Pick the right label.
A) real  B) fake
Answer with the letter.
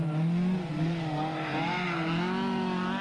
A